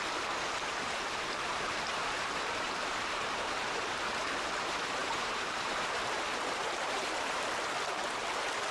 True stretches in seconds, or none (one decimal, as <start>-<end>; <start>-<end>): 0.0-1.9; 3.9-5.0; 7.4-8.7